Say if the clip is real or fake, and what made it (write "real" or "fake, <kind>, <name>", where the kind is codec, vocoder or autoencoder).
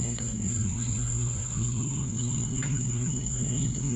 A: fake, codec, SNAC